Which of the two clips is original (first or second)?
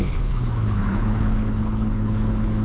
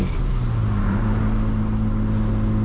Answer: second